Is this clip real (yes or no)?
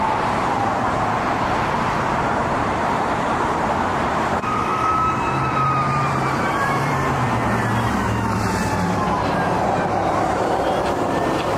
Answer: no